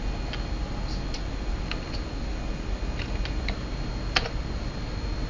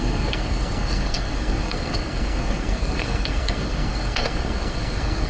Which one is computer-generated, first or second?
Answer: second